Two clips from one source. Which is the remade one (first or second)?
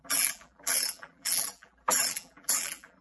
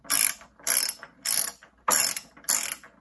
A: first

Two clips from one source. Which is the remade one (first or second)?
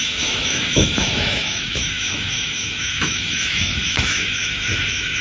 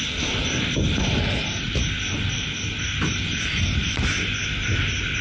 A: first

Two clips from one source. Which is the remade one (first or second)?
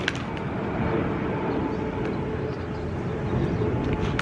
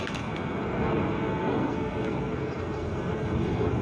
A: second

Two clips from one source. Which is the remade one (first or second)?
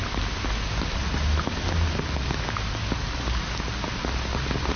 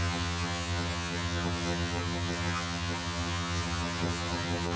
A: second